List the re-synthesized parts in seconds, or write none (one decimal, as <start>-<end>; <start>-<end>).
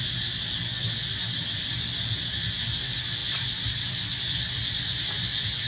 none